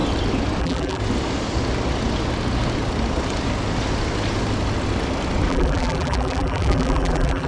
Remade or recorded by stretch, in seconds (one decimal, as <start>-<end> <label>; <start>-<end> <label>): 0.0-0.6 recorded; 0.6-1.0 remade; 1.0-5.5 recorded; 5.5-7.5 remade